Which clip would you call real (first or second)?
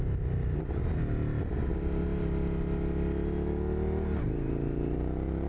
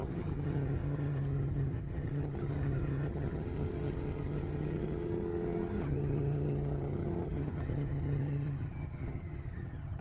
first